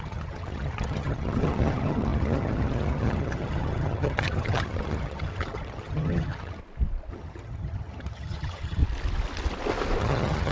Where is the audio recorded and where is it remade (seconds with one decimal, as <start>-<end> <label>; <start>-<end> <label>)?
0.0-6.6 remade; 6.6-7.1 recorded; 7.1-8.8 remade; 8.8-10.0 recorded; 10.0-10.5 remade